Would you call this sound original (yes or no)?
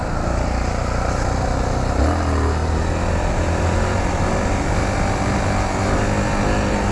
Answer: yes